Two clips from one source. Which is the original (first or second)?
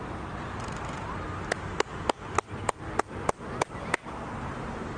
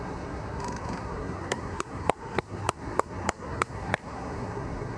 first